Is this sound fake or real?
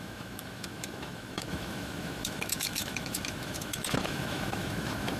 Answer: fake